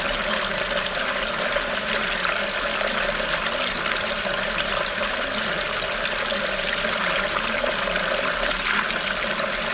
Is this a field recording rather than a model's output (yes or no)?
yes